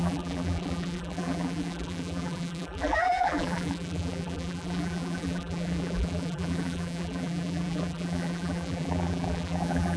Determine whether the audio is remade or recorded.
remade